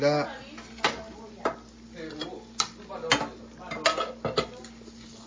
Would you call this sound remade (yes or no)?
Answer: no